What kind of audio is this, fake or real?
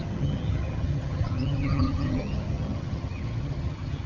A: fake